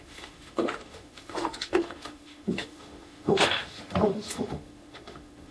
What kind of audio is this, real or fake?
fake